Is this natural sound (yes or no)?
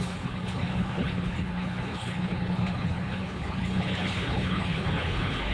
no